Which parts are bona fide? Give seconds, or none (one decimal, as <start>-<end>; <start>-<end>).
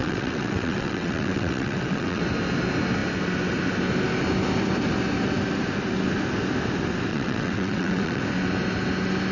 2.2-7.1; 8.2-9.3